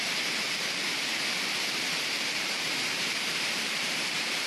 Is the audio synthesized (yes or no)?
yes